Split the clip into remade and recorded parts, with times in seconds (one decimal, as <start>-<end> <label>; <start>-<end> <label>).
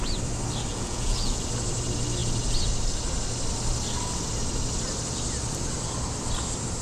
0.0-0.7 recorded; 0.7-1.4 remade; 1.4-6.8 recorded